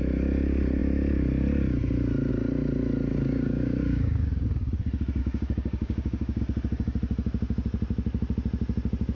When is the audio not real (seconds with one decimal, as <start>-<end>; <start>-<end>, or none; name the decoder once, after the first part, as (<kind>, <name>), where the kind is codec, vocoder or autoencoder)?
3.1-4.3 (codec, DAC); 5.2-6.4